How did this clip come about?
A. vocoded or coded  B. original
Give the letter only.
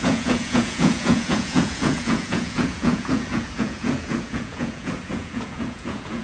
A